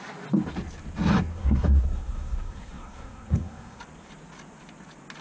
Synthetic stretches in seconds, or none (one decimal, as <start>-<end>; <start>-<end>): 1.3-3.8